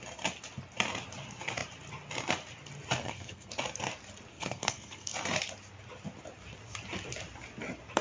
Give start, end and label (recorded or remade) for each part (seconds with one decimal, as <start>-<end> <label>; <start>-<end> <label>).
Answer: 0.0-3.0 recorded; 3.0-3.5 remade; 3.5-4.3 recorded; 4.3-5.1 remade; 5.1-8.0 recorded